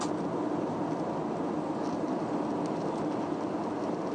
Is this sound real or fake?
real